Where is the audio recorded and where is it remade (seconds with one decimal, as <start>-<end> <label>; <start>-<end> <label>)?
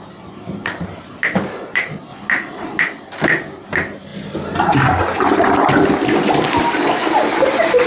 0.0-2.1 remade; 2.1-2.8 recorded; 2.8-7.9 remade